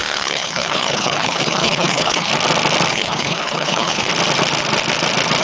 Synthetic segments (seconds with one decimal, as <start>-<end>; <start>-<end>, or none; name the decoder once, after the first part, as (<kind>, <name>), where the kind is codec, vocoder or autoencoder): 0.0-2.3 (codec, HILCodec); 2.9-4.1